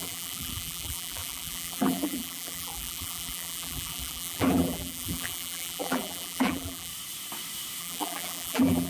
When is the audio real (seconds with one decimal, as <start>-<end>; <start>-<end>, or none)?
6.9-7.8